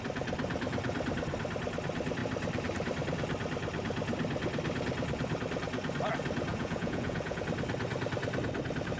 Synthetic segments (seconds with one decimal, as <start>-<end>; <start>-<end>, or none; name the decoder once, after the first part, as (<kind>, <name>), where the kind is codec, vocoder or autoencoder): 6.5-7.4 (vocoder, Vocos)